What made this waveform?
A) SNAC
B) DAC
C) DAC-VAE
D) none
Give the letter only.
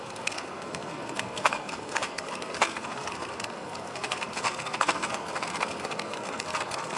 A